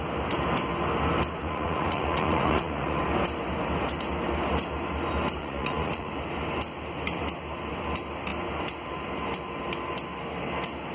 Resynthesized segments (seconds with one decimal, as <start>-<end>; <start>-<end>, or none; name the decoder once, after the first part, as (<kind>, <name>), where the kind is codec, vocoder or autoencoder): 1.4-3.0 (vocoder, Vocos); 5.4-6.1